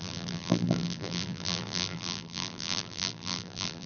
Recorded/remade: remade